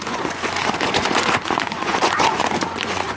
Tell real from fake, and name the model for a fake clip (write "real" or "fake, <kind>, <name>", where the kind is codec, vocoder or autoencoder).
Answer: fake, vocoder, Vocos